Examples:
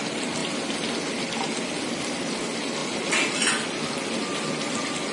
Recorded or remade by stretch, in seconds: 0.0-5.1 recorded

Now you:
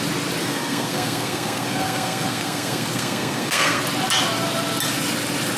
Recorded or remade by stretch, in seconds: 0.0-0.4 recorded; 0.4-3.8 remade; 3.8-5.6 recorded

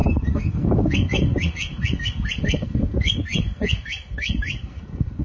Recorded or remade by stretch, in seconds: 0.0-5.2 remade